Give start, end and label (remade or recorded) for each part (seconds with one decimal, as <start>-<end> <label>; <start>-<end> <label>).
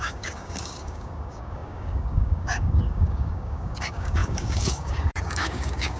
0.0-6.0 remade